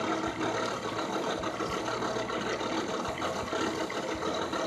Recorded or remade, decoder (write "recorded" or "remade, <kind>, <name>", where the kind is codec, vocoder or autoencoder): recorded